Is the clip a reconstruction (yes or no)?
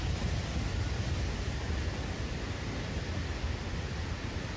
no